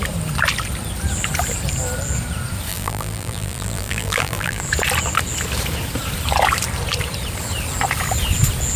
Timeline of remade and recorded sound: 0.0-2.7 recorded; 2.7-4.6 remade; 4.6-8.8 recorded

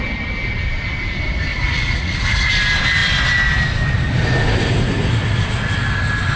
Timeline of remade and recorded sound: 0.0-1.5 recorded; 1.5-2.5 remade; 2.5-6.4 recorded